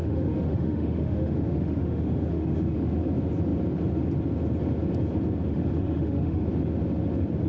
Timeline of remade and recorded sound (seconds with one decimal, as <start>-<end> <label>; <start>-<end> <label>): 0.0-3.1 remade; 3.1-5.5 recorded; 5.5-6.5 remade; 6.5-7.5 recorded